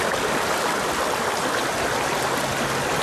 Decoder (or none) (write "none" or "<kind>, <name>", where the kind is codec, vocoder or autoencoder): none